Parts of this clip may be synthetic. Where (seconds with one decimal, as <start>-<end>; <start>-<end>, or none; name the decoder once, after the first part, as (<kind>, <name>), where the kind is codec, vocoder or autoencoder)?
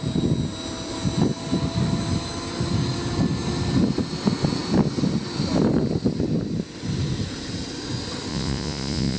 8.3-9.2 (vocoder, Vocos)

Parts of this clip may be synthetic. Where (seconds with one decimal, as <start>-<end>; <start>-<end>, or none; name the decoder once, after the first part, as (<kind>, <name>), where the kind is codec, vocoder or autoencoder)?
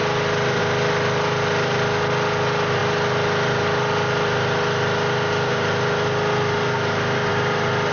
none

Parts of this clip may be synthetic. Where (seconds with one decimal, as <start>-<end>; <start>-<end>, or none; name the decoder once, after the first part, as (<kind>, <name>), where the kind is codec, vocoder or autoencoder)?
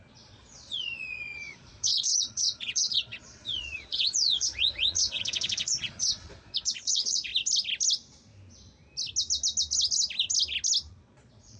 0.0-7.3 (vocoder, Vocos); 10.9-11.6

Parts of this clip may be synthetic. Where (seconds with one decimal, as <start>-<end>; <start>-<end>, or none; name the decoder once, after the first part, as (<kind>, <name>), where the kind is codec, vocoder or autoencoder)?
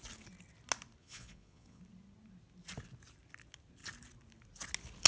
1.0-1.8 (vocoder, Vocos)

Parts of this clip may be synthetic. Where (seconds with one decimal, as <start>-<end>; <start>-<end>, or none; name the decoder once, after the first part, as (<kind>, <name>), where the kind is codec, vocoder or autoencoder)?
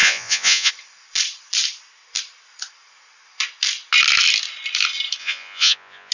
0.0-0.7 (vocoder, Vocos); 5.2-6.1